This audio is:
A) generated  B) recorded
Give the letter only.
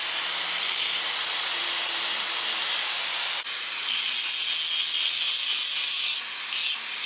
B